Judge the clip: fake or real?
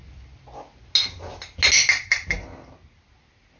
real